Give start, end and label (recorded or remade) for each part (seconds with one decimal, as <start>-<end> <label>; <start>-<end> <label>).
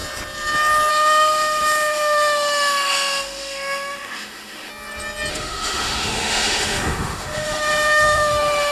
0.0-0.9 recorded; 0.9-4.7 remade; 4.7-5.3 recorded; 5.3-8.7 remade